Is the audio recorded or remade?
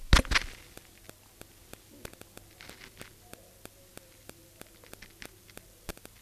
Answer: recorded